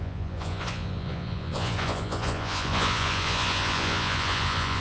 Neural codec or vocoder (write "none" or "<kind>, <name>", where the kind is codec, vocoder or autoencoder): vocoder, Vocos